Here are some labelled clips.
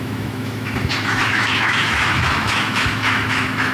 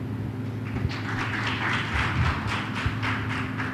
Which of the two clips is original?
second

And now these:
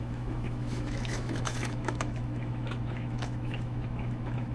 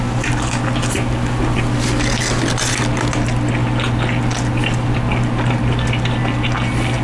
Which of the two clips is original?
second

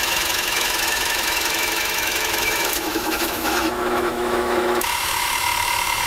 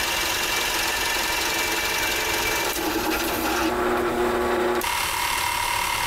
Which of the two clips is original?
second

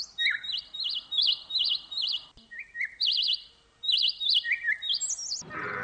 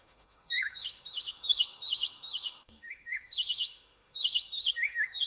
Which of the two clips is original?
first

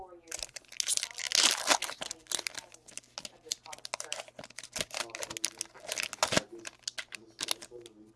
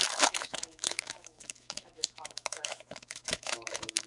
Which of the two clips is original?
first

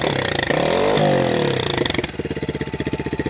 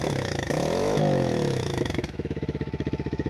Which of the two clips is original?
first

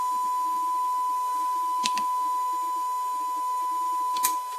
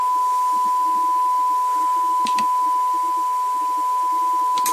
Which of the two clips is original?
second